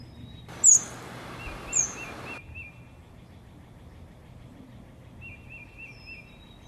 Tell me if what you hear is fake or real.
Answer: real